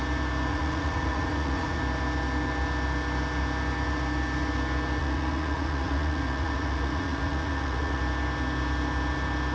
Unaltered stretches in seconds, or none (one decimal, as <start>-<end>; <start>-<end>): 0.0-0.5; 1.8-5.0; 8.0-9.5